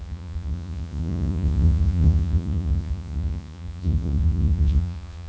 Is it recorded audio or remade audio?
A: remade